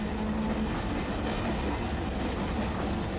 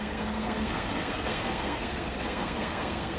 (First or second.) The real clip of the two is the first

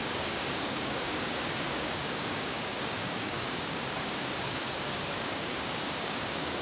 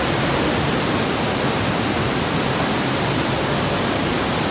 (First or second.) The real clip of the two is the second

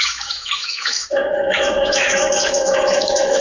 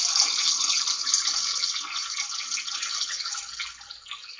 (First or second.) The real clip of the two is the second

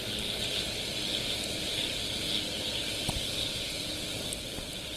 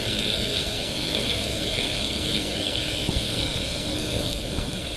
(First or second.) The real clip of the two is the first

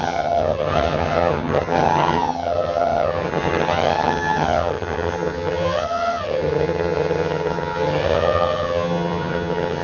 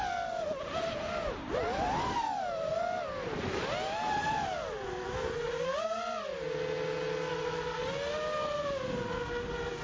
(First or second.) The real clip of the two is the second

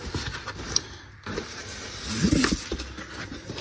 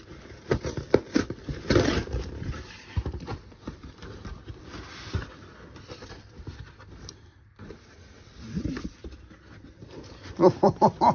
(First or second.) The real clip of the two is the first